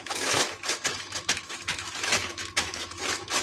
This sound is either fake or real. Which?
fake